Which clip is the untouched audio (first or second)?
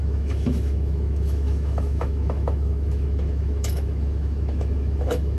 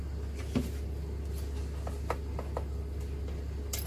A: second